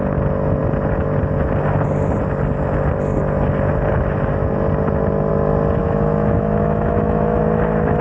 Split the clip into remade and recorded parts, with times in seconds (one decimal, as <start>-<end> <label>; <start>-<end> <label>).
0.0-5.8 recorded; 5.8-7.4 remade; 7.4-8.0 recorded